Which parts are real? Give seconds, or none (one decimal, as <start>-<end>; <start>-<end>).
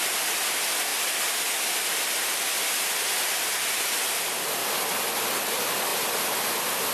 0.0-6.9